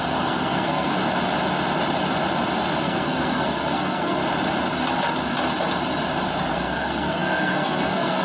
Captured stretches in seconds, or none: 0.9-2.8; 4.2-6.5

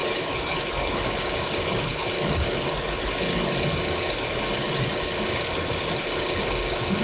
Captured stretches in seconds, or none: 0.6-7.0

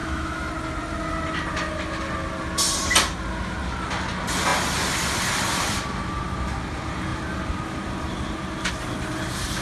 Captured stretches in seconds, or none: 0.5-9.6